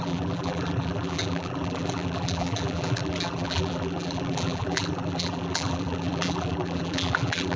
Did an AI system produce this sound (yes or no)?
yes